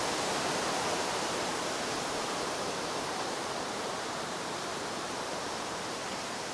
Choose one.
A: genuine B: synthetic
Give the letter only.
B